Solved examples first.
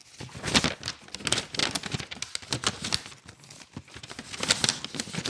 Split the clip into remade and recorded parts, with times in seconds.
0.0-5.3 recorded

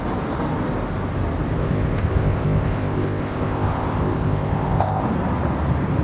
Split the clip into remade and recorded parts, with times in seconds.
0.0-1.6 recorded; 1.6-5.0 remade; 5.0-6.0 recorded